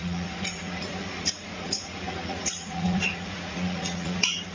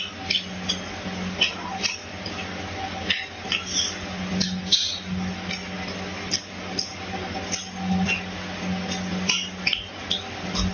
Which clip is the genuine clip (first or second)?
second